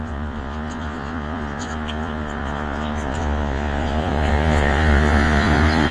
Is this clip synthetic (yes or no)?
yes